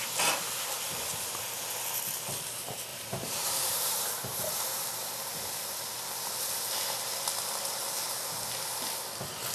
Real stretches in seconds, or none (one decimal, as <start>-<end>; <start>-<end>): 0.0-2.9; 4.9-9.5